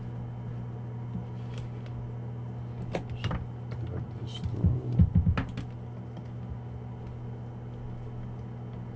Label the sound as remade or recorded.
recorded